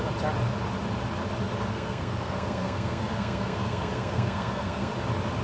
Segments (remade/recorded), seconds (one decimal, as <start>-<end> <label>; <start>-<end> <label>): 0.0-1.7 recorded; 1.7-4.9 remade; 4.9-5.4 recorded